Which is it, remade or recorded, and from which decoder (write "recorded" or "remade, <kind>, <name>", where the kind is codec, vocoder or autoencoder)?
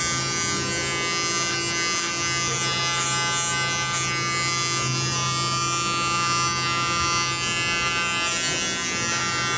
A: recorded